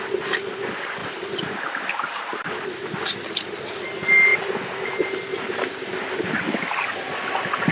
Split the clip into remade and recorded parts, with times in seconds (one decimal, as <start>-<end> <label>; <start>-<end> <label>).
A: 0.0-1.0 recorded; 1.0-3.2 remade; 3.2-7.7 recorded